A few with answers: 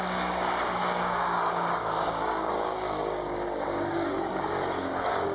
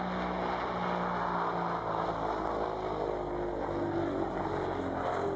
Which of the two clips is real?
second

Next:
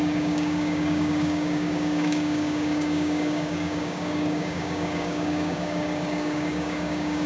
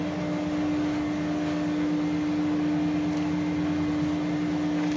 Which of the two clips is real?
second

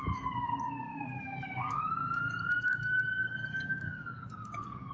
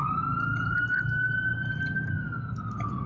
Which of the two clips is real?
second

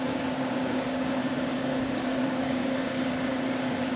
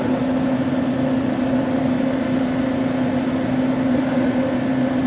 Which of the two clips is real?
second